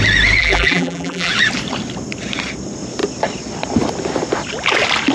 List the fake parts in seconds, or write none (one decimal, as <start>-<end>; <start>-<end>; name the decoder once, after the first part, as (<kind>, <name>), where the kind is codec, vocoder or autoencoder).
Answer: 0.4-1.3 (vocoder, BigVGAN v2)

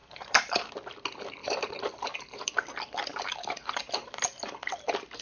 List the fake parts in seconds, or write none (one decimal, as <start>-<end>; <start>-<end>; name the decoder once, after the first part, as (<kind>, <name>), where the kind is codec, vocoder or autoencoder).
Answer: 0.0-0.7 (vocoder, BigVGAN v2); 1.4-2.5; 3.1-4.1

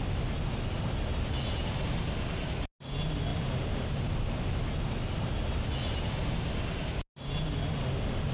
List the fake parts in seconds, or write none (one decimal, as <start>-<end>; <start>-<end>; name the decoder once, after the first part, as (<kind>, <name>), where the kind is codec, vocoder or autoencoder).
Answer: 3.3-4.4 (vocoder, BigVGAN v2)

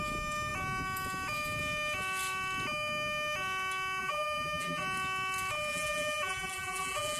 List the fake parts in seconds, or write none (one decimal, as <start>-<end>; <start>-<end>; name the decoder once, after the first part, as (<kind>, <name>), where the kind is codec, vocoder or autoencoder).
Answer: 4.0-4.8 (vocoder, BigVGAN v2); 5.7-7.2

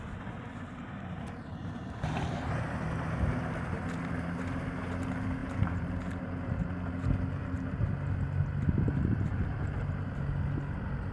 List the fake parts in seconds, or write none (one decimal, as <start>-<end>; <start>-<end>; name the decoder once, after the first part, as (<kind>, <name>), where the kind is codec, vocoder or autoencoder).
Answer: 1.6-2.5 (vocoder, BigVGAN v2); 5.4-6.5; 9.3-9.9